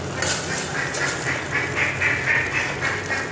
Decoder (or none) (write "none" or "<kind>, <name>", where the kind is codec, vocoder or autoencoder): none